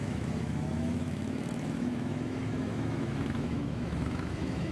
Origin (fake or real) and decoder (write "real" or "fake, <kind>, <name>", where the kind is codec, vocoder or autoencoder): fake, autoencoder, DAC-VAE